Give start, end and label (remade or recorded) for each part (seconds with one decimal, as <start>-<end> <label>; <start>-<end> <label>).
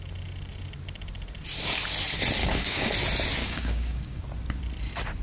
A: 0.0-2.4 recorded; 2.4-2.9 remade; 2.9-3.4 recorded; 3.4-4.2 remade; 4.2-5.2 recorded